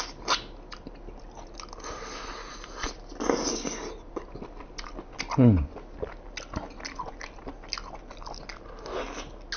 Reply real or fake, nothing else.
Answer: real